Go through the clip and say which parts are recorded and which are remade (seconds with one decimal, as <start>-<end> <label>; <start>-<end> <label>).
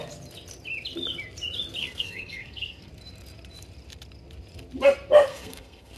0.0-1.8 recorded; 1.8-2.9 remade; 2.9-5.3 recorded; 5.3-6.0 remade